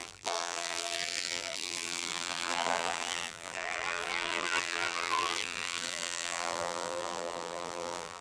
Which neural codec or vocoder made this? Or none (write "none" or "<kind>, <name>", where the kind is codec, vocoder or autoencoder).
vocoder, BigVGAN v2